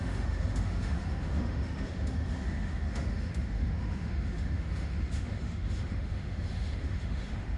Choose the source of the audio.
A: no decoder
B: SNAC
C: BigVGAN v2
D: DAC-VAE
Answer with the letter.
D